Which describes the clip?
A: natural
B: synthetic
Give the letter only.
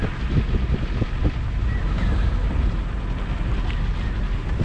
A